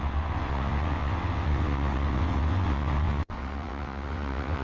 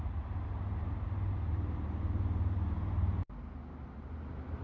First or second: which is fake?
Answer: first